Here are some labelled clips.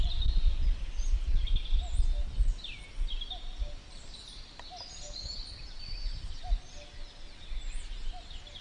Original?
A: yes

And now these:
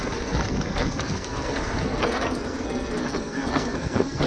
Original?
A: no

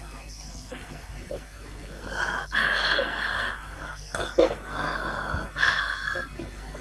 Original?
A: no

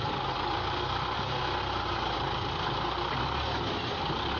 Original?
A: yes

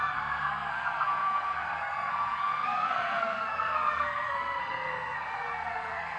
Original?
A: no